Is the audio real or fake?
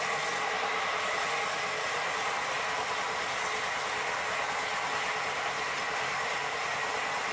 real